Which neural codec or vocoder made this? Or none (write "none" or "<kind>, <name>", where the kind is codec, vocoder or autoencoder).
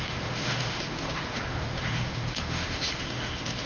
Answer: autoencoder, DAC-VAE